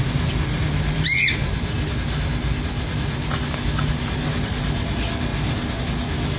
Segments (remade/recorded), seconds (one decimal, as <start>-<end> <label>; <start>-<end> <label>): 0.0-6.4 recorded